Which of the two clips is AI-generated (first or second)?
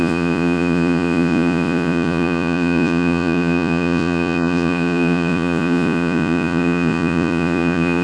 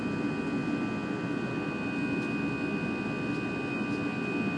first